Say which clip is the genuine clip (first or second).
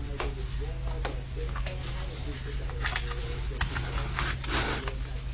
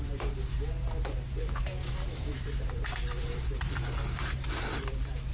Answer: first